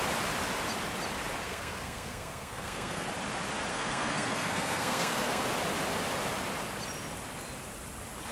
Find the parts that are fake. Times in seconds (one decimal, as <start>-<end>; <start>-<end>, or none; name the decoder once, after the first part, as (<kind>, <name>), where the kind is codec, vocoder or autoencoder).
1.4-3.1 (codec, SNAC); 3.7-5.4